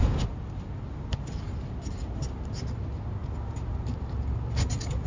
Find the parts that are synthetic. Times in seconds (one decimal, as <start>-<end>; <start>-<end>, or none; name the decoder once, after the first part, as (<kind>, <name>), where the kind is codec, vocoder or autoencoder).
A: none